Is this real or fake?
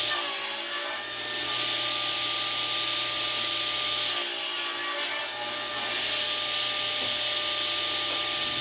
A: real